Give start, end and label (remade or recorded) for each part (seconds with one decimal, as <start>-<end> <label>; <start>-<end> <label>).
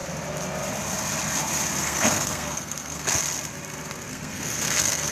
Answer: 0.0-1.8 recorded; 1.8-3.2 remade; 3.2-4.1 recorded; 4.1-5.1 remade